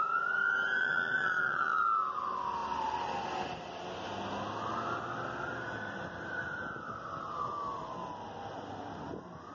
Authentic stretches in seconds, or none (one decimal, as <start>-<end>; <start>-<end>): 0.0-0.8; 1.8-9.5